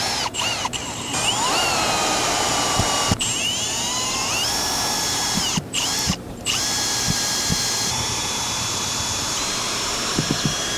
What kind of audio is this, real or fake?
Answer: fake